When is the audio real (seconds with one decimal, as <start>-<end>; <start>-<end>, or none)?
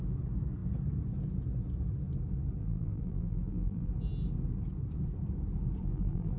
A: 0.0-2.6; 3.9-5.8